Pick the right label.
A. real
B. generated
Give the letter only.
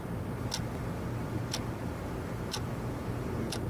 A